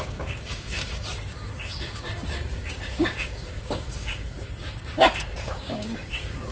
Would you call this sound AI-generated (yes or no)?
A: yes